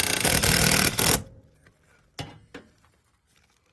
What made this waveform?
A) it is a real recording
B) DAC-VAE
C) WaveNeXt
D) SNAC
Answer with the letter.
A